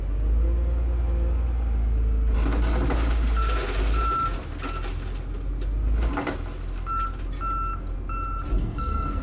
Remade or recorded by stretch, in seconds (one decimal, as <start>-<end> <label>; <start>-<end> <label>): 0.0-8.6 recorded; 8.6-9.2 remade